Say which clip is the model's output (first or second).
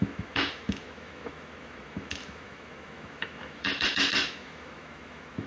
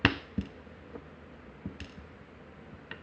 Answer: first